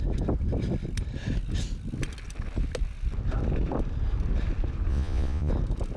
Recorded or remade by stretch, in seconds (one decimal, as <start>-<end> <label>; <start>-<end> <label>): 0.0-4.9 recorded; 4.9-5.5 remade; 5.5-6.0 recorded